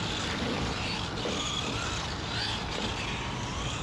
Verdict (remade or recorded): remade